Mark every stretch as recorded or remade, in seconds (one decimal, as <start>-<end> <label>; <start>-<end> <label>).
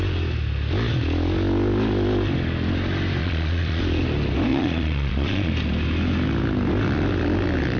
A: 0.0-3.2 recorded; 3.2-3.8 remade; 3.8-4.5 recorded; 4.5-5.5 remade; 5.5-7.8 recorded